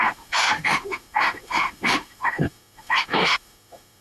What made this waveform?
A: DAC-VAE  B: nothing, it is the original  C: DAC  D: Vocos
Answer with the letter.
A